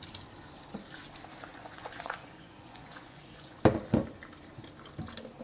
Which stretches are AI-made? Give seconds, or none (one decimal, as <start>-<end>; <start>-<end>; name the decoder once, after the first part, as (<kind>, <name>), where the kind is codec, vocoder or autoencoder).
1.5-3.6 (vocoder, Vocos)